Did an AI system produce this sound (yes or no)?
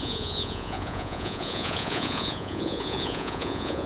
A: yes